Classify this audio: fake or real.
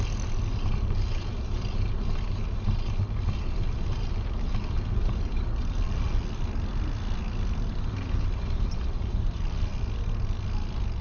real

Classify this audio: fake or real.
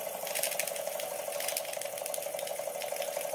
real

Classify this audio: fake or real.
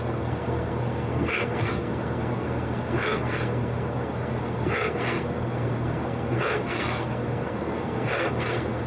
fake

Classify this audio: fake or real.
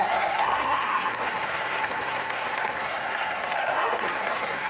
fake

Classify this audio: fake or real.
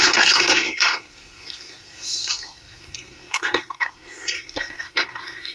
fake